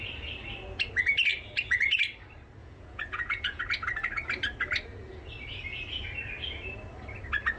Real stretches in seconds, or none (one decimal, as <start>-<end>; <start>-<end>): 0.0-2.6; 3.6-7.6